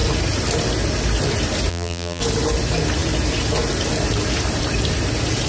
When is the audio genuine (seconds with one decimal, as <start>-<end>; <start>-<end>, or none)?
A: 0.0-1.7; 2.2-5.5